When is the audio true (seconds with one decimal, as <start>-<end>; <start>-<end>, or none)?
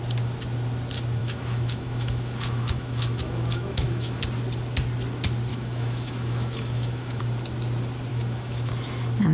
0.0-1.2; 4.2-5.5; 7.2-8.1; 8.7-9.3